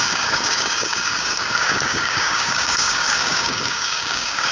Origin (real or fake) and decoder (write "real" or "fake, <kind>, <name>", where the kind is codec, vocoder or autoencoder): fake, codec, DAC